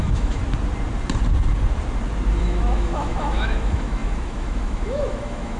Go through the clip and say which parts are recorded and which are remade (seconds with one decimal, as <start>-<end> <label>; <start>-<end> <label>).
0.0-0.4 remade; 0.4-2.4 recorded; 2.4-5.6 remade